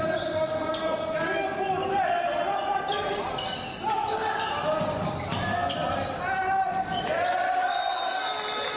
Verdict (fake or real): real